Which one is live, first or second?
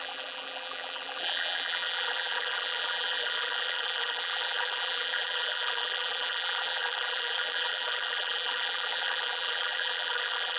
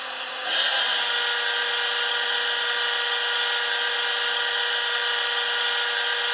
second